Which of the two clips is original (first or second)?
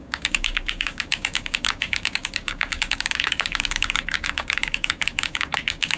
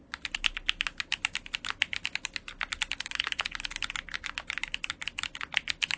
second